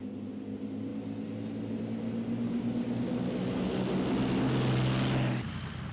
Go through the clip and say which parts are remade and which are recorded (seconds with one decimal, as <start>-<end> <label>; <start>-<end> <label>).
0.0-5.9 recorded